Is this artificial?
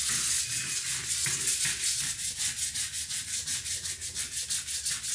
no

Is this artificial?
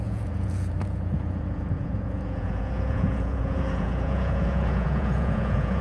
yes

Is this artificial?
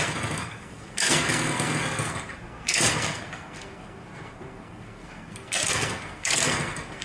yes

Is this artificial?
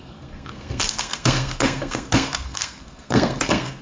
yes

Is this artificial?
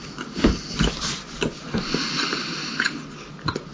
no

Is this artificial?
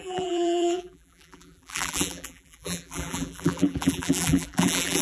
yes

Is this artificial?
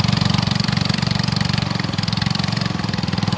yes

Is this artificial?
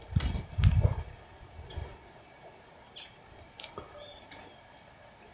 no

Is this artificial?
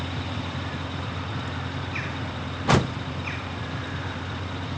no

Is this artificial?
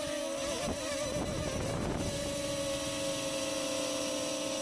no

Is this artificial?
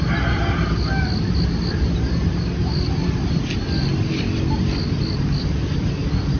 no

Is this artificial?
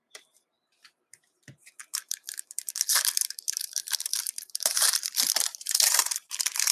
yes